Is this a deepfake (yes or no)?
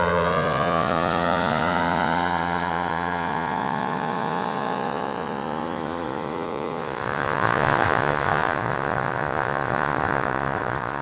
yes